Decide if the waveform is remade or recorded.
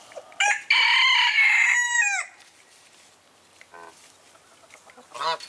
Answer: recorded